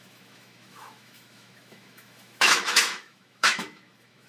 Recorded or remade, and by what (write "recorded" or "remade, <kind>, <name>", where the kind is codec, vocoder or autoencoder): remade, autoencoder, DAC-VAE